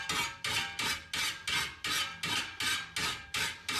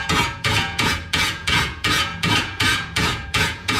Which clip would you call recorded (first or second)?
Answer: first